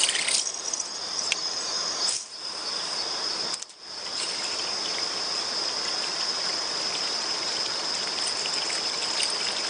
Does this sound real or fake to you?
real